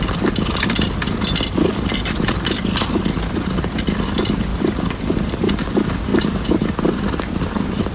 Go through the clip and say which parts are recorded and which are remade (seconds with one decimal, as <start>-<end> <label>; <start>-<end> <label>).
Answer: 0.0-7.9 recorded